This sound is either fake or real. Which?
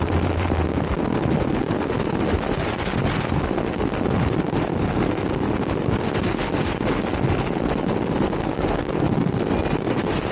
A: real